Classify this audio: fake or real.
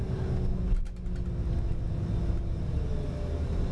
real